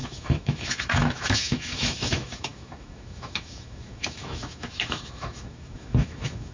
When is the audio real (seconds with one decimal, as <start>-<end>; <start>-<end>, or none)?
none

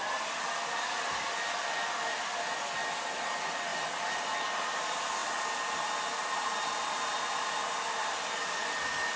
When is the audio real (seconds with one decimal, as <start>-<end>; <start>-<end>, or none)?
0.0-9.2